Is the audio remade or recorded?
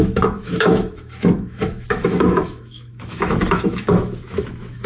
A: remade